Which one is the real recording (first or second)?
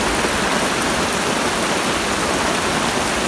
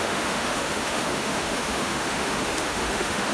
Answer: first